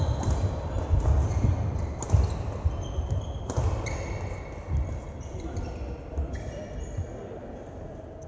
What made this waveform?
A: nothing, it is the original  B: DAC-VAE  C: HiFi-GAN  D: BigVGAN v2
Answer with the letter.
A